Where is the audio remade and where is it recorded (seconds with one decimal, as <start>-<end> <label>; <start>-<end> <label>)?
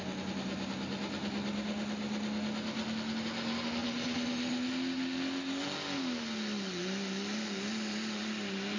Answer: 0.0-8.8 recorded